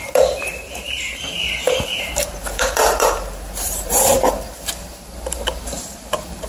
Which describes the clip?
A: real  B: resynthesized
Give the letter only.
B